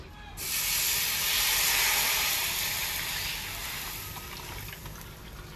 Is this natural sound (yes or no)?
yes